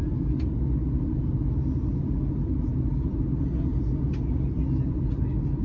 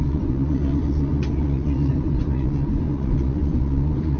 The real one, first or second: first